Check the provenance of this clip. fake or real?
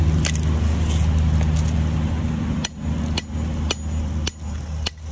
real